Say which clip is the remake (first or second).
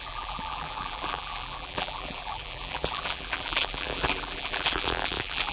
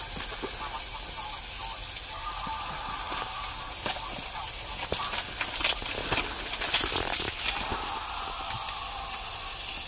first